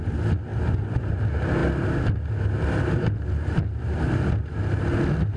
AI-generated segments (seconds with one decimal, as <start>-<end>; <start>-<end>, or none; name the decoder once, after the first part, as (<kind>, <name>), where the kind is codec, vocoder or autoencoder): none